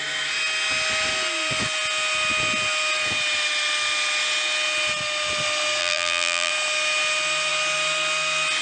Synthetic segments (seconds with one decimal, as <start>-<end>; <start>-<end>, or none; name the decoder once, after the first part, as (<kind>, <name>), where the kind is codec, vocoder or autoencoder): 5.8-6.5 (vocoder, BigVGAN v2)